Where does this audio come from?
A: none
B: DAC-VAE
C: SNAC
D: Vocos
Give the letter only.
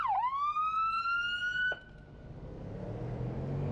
A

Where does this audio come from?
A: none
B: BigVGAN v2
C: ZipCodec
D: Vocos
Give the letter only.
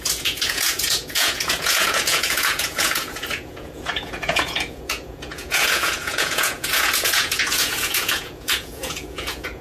D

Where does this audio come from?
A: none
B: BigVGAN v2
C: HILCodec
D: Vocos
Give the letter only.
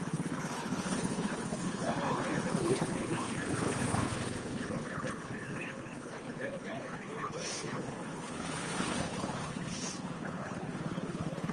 C